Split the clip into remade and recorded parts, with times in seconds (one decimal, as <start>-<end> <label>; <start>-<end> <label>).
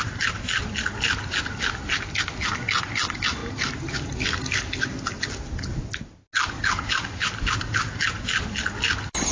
0.0-9.3 recorded